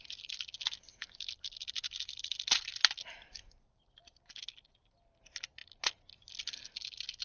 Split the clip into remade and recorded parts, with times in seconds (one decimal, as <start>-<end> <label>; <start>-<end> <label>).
0.0-7.2 recorded